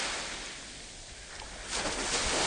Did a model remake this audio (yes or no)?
no